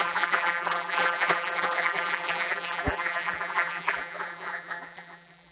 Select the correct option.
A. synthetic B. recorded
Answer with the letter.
A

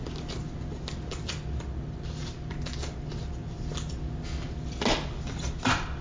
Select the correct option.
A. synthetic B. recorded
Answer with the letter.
B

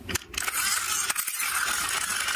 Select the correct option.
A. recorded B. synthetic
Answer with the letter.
A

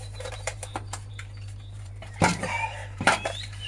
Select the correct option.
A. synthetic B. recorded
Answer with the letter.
A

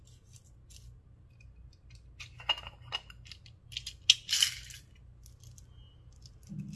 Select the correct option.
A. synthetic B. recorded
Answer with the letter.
B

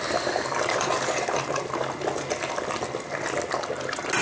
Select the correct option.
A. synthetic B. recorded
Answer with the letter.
B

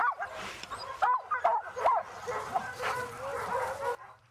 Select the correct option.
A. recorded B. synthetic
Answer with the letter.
A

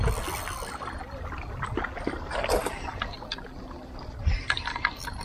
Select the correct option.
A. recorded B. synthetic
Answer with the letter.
A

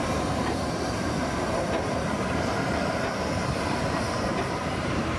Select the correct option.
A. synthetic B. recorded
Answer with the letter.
A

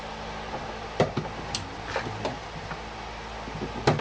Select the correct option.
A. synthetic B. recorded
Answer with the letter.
B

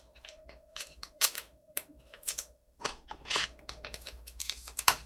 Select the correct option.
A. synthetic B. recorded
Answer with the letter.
A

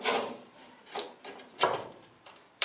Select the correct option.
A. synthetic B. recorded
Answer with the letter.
A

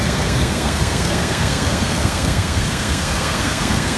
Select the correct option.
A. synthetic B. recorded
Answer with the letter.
A